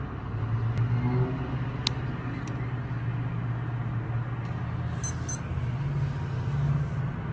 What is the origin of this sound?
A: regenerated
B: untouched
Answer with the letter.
B